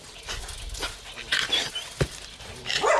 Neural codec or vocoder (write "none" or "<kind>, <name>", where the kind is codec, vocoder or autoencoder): none